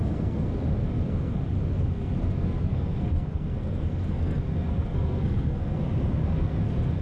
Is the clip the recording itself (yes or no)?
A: no